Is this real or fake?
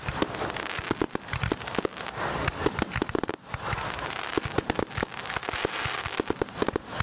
real